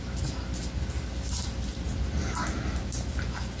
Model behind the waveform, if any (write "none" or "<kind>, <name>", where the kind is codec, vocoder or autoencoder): none